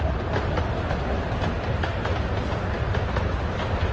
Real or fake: real